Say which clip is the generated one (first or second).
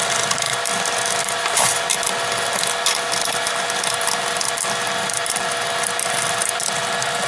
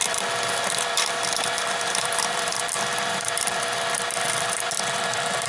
second